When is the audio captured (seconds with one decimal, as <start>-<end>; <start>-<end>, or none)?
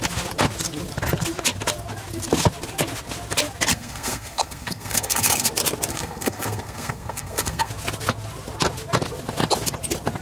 0.0-3.7; 5.5-5.9; 7.7-10.2